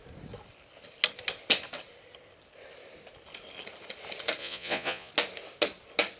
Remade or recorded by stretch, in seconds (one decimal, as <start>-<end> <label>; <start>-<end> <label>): 0.0-4.4 recorded; 4.4-5.1 remade; 5.1-6.2 recorded